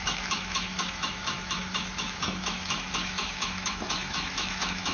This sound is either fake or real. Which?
fake